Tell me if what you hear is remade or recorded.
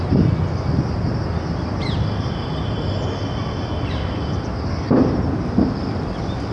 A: recorded